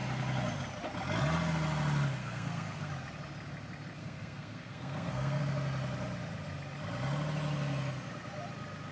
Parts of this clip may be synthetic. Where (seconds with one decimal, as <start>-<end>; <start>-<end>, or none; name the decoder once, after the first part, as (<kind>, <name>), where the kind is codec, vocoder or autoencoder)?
2.2-2.9 (codec, SNAC); 4.0-5.4